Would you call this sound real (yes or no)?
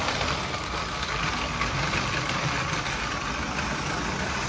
yes